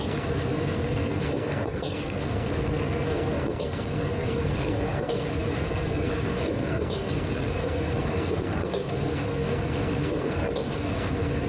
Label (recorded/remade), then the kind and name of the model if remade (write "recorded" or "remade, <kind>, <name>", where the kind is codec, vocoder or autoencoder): remade, codec, SNAC